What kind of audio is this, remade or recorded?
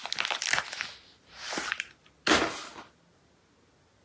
recorded